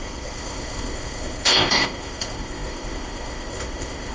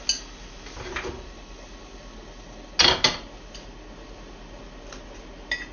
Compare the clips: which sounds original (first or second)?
second